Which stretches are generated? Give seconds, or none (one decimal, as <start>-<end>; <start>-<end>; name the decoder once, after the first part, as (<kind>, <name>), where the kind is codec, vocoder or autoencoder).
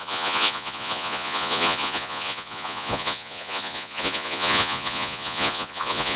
0.0-6.2 (vocoder, Vocos)